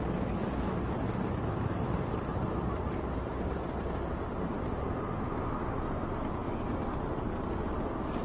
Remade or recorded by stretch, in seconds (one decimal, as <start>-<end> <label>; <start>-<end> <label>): 0.0-2.3 recorded; 2.3-5.2 remade; 5.2-8.2 recorded